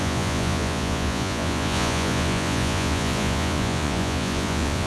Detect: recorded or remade remade